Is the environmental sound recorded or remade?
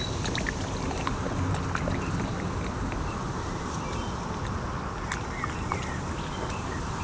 recorded